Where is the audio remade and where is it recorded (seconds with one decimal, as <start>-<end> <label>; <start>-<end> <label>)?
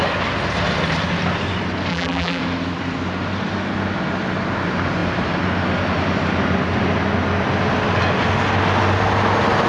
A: 0.0-1.9 recorded; 1.9-2.4 remade; 2.4-9.7 recorded